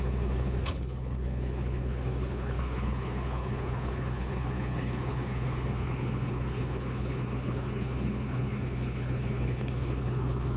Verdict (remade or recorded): remade